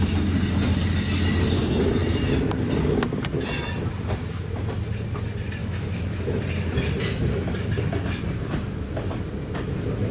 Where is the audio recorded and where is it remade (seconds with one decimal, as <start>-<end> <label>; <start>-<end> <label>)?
0.0-5.6 recorded; 5.6-6.4 remade; 6.4-10.1 recorded